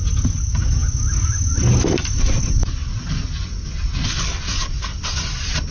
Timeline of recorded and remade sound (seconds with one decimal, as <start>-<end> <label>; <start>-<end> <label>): 0.0-5.7 recorded